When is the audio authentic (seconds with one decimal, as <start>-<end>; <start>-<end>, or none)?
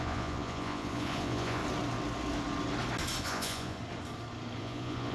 1.6-3.2; 3.8-4.6